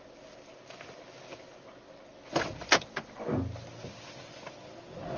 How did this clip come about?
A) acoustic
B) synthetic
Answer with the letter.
A